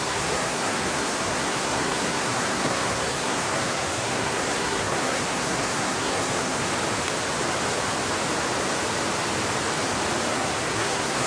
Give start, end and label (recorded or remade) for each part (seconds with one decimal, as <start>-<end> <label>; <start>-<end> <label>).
0.0-6.7 remade; 6.7-10.3 recorded; 10.3-11.3 remade